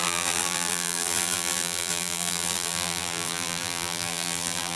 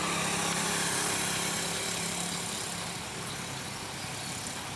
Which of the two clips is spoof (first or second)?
first